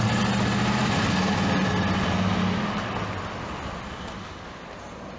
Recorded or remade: recorded